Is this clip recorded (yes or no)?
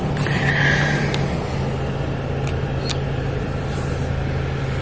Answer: yes